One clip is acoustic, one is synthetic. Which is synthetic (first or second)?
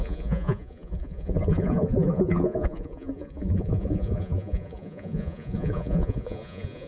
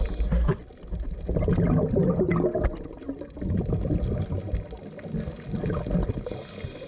first